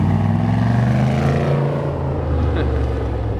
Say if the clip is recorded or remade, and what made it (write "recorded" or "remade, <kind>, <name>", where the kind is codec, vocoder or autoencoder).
recorded